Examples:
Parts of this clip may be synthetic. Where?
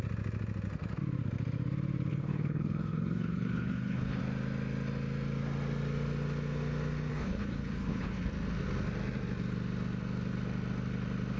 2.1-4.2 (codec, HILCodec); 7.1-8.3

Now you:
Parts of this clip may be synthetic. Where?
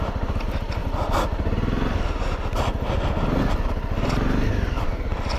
none